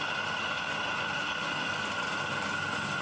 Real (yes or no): yes